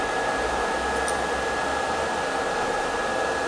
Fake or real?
real